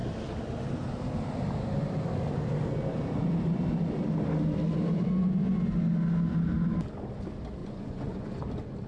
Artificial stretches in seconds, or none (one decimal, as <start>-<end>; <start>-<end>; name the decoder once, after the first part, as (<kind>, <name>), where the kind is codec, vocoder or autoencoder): 7.6-8.4 (vocoder, Vocos)